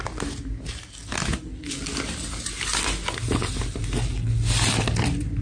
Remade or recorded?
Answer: recorded